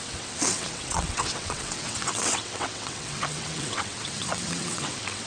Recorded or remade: remade